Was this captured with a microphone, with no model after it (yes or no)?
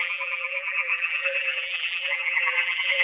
no